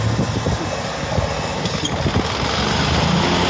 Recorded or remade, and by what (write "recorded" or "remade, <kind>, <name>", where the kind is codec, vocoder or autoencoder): recorded